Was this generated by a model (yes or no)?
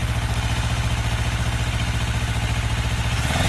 no